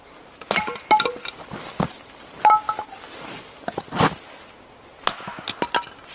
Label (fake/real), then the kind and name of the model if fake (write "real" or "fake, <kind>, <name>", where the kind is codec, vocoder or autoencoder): real